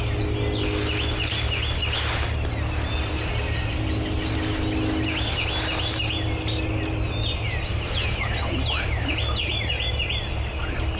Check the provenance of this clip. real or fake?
real